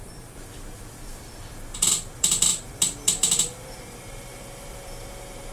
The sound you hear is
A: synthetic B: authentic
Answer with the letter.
A